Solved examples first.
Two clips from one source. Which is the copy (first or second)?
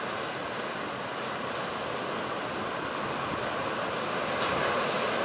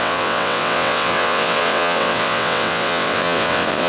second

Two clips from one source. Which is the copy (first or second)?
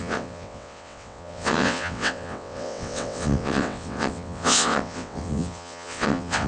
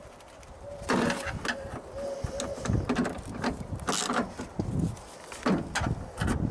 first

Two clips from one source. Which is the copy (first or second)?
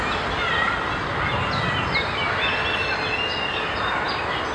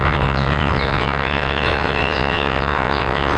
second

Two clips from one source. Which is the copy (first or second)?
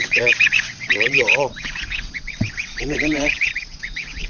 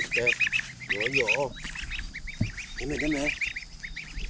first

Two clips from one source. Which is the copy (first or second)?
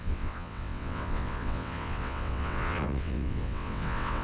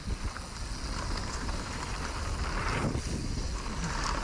first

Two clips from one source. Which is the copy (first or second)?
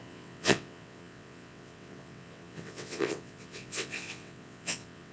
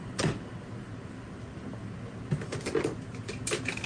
first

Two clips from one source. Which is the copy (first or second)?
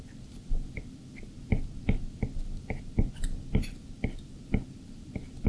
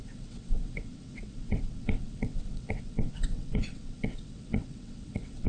second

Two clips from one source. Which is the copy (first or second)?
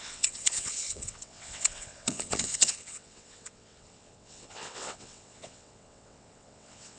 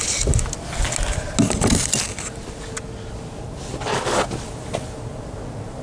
first